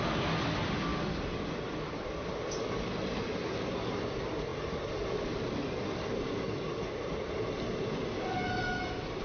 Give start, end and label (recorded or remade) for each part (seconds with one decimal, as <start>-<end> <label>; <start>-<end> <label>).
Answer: 0.0-9.2 recorded